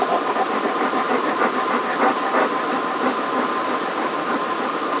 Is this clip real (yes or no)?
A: yes